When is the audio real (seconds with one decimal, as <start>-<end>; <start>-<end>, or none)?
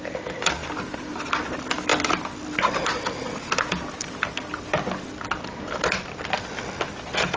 0.6-1.4